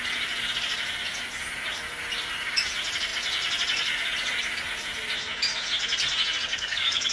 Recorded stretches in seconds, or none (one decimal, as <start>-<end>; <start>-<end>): 0.0-6.5